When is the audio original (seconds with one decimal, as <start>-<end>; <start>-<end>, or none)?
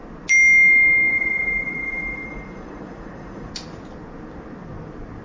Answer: 0.0-1.1; 3.5-5.2